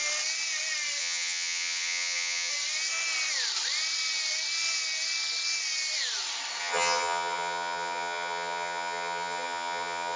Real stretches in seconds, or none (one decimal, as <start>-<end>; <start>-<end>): 0.0-1.0; 2.5-6.6